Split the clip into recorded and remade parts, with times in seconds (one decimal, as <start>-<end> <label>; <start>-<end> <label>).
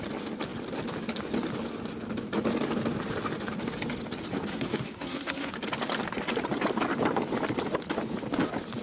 0.0-4.5 recorded; 4.5-5.5 remade; 5.5-8.8 recorded